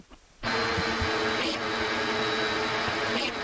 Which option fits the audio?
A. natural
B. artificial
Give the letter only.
A